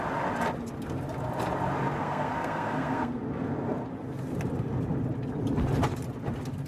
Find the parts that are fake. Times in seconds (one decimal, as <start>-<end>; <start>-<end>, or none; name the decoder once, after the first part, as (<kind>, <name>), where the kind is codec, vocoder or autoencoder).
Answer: 2.0-3.2 (codec, SNAC)